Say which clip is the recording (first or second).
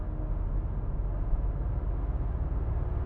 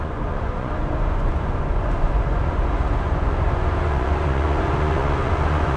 first